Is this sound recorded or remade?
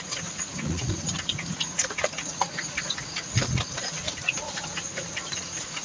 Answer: remade